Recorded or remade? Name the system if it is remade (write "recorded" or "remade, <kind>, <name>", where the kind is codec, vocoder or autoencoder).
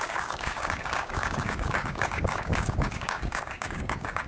remade, codec, DAC